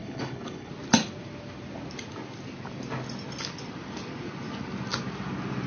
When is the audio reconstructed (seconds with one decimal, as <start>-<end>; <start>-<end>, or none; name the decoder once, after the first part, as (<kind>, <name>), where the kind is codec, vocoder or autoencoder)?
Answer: 0.0-0.7 (codec, HILCodec)